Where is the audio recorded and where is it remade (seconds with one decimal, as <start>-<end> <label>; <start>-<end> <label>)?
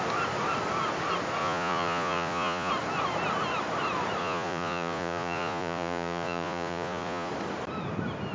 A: 0.0-1.4 recorded; 1.4-2.7 remade; 2.7-4.2 recorded; 4.2-7.3 remade; 7.3-8.3 recorded